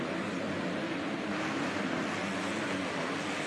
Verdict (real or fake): real